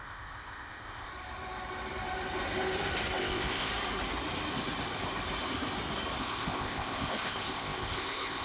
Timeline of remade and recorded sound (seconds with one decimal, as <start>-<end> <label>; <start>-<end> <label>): 0.0-1.1 remade; 1.1-3.2 recorded; 3.2-3.7 remade; 3.7-6.2 recorded; 6.2-8.4 remade